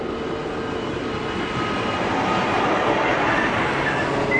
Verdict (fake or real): real